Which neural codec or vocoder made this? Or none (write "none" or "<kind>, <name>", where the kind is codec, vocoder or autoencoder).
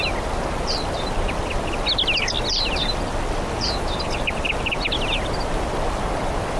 none